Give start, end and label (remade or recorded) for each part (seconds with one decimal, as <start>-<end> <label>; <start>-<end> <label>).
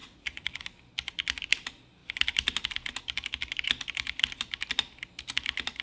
0.0-0.6 remade; 0.6-5.8 recorded